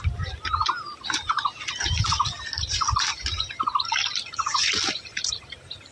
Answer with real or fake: real